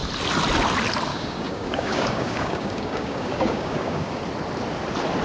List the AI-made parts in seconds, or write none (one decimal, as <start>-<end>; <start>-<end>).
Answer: 1.1-4.2